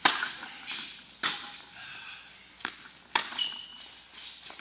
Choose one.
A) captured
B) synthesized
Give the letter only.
A